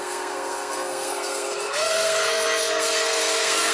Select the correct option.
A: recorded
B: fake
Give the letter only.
B